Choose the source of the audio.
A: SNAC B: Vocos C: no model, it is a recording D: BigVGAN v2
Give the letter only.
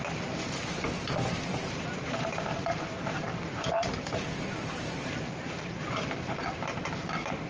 D